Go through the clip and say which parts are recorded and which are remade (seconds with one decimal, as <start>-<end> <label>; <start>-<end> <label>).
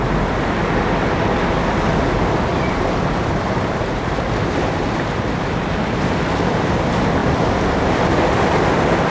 0.0-2.5 recorded; 2.5-5.4 remade; 5.4-9.1 recorded